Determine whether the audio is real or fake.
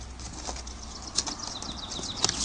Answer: real